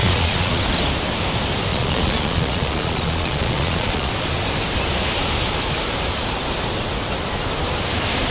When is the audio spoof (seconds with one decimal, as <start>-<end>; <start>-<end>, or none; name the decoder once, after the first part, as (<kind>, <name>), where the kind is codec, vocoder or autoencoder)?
0.0-0.6 (vocoder, Vocos); 1.7-4.1

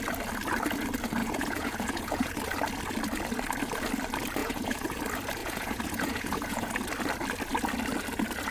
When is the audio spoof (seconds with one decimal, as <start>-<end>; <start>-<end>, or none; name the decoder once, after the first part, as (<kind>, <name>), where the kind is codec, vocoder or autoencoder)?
1.2-2.3 (vocoder, Vocos); 4.4-5.0; 5.4-6.7

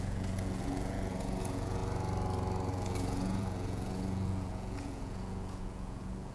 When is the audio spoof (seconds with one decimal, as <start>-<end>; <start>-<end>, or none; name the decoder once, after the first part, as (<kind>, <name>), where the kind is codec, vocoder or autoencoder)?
0.0-1.8 (vocoder, Vocos); 2.7-6.3

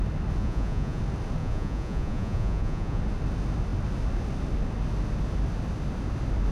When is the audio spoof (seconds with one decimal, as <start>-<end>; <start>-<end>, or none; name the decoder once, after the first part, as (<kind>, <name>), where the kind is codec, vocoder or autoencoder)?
0.4-1.0 (vocoder, Vocos); 1.4-3.0

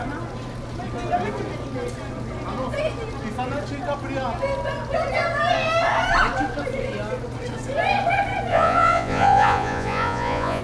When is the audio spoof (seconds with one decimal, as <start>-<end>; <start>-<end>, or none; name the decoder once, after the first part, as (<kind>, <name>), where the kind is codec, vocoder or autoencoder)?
8.5-10.6 (vocoder, Vocos)

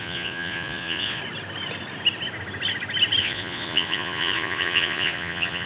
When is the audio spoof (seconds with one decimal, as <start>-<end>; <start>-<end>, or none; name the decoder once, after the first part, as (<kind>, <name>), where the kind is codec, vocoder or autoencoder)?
0.0-1.2 (vocoder, Vocos); 3.2-5.7

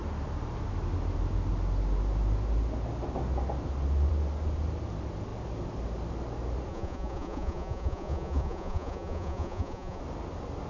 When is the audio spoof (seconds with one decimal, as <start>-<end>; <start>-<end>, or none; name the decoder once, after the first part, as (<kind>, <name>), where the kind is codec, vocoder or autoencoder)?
6.7-10.0 (vocoder, Vocos)